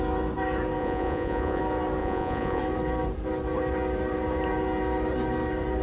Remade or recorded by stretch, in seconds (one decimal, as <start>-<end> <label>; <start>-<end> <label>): 0.0-0.8 recorded; 0.8-1.6 remade; 1.6-2.0 recorded; 2.0-2.6 remade; 2.6-5.8 recorded